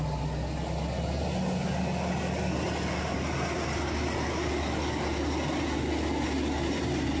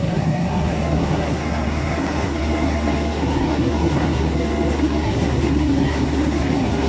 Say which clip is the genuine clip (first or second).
first